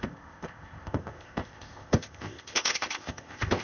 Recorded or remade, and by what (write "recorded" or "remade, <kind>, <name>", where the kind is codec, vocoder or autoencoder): remade, codec, ZipCodec